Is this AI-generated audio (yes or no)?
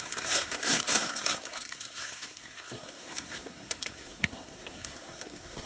yes